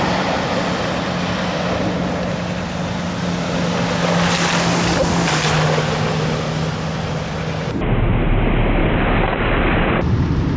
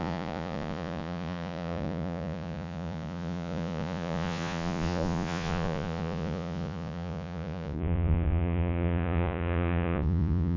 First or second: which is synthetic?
second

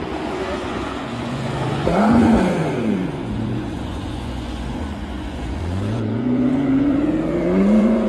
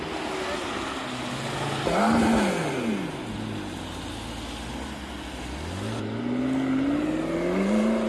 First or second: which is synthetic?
first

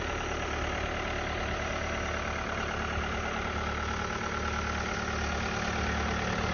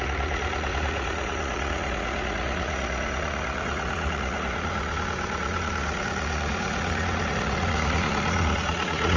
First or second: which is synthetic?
second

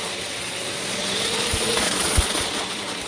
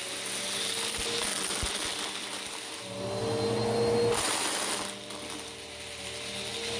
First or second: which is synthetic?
first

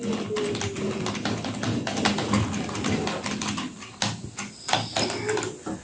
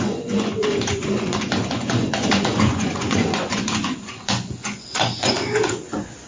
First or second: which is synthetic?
second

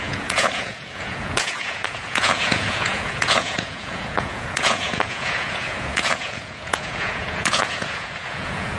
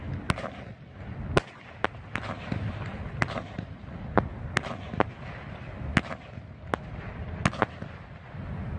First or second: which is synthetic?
first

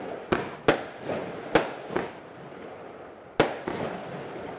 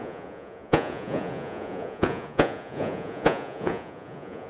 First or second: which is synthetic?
second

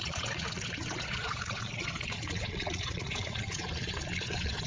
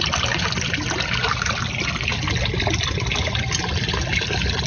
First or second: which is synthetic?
first